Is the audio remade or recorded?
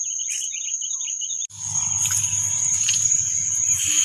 recorded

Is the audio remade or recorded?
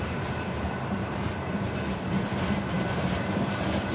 remade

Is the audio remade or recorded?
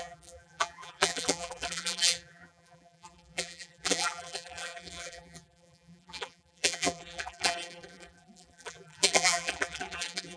remade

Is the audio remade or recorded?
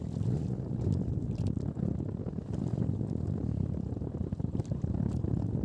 remade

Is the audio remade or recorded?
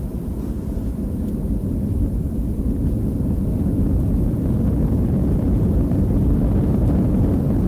remade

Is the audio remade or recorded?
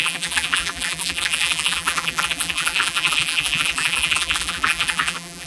remade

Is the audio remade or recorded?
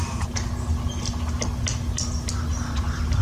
recorded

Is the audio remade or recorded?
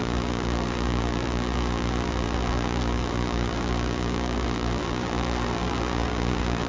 remade